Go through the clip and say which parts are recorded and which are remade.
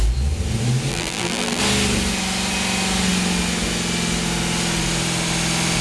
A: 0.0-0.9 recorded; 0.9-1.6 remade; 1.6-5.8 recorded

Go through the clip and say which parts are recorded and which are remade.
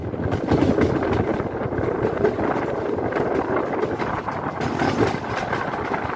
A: 0.0-6.2 recorded